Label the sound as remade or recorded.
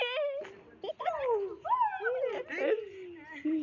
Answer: recorded